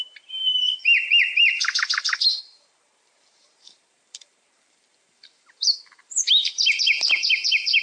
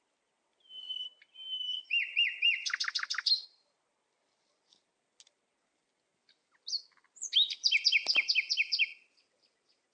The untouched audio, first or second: second